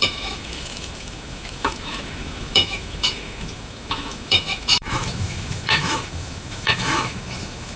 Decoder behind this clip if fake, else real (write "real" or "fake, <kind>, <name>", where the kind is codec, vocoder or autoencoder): fake, autoencoder, DAC-VAE